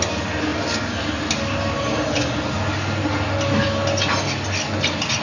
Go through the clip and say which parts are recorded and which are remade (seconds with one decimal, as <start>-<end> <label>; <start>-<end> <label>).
0.0-5.2 recorded